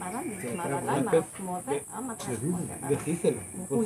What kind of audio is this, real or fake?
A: real